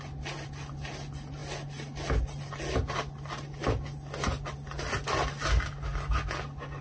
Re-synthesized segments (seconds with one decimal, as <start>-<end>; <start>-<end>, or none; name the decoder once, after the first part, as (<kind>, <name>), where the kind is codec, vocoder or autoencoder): none